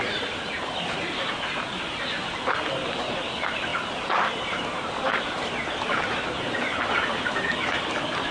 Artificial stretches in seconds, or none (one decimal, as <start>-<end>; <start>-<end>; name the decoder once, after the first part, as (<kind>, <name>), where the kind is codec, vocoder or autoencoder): none